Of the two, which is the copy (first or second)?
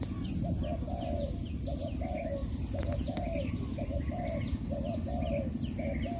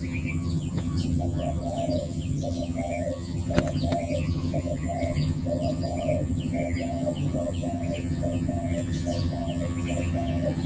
second